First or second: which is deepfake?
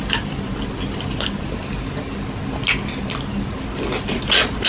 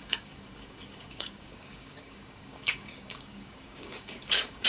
second